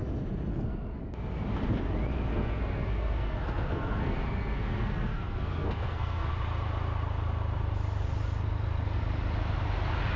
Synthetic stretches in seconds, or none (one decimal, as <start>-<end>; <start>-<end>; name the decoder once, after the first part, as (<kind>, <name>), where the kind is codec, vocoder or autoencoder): 0.5-1.0 (codec, SNAC); 2.3-6.3